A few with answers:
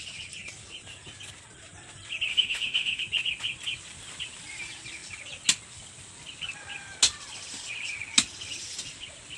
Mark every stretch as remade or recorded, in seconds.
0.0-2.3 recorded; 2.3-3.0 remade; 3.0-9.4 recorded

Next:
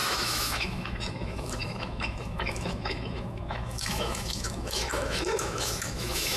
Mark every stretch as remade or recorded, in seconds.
0.0-6.4 remade

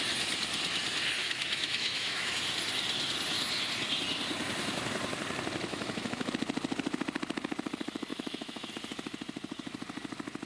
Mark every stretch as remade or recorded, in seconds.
0.0-1.2 recorded; 1.2-2.3 remade; 2.3-5.7 recorded; 5.7-6.3 remade; 6.3-8.1 recorded; 8.1-8.7 remade; 8.7-10.5 recorded

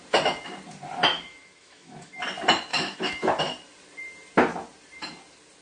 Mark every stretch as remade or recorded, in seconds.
0.0-1.1 recorded; 1.1-2.2 remade; 2.2-2.7 recorded; 2.7-3.4 remade; 3.4-5.6 recorded